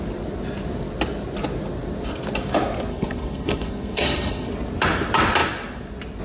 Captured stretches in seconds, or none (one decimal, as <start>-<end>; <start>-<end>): 0.0-2.9; 4.5-6.2